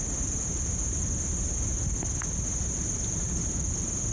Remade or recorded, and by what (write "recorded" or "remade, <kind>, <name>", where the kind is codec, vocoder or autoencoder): recorded